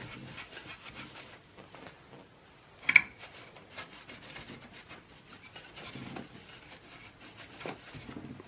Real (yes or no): yes